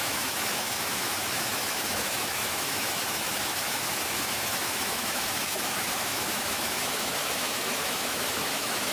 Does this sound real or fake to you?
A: fake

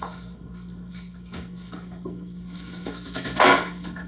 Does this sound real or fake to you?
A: fake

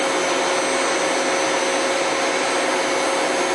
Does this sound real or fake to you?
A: real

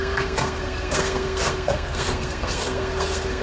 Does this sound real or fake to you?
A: fake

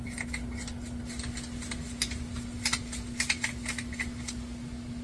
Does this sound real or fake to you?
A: real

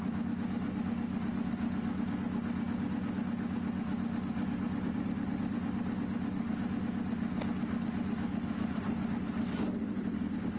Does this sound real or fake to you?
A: real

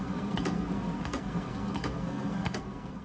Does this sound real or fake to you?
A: fake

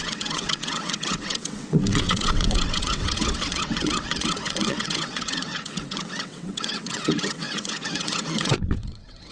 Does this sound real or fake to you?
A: fake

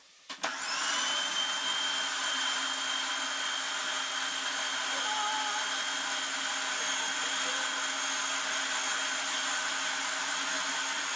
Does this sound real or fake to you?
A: real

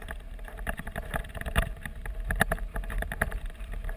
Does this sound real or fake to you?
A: fake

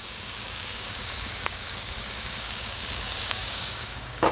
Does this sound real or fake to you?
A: fake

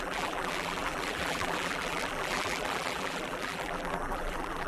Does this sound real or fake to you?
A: fake